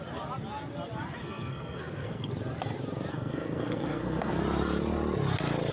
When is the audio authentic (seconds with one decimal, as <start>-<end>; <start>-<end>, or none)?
0.0-1.2; 2.3-3.1; 4.3-5.7